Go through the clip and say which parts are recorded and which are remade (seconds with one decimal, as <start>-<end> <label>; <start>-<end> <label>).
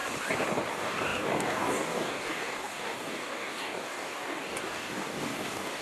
0.0-0.7 recorded; 0.7-5.8 remade